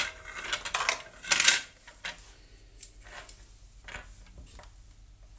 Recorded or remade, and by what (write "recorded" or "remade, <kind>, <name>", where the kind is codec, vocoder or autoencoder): recorded